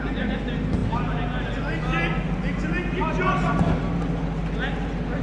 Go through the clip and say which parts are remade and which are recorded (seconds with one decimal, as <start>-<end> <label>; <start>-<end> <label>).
0.0-5.2 recorded